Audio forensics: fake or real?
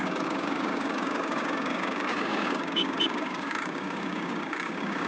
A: fake